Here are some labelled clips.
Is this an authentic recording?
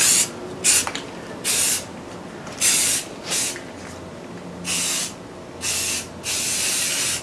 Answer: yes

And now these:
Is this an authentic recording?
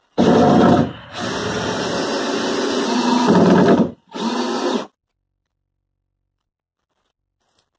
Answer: yes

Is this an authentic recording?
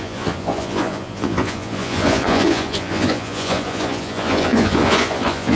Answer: no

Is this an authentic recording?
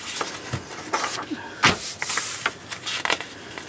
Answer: yes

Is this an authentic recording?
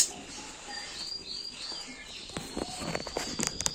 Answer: yes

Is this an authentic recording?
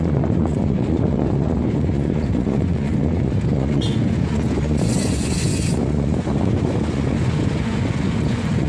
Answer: no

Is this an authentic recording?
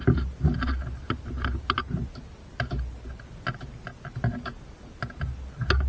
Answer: yes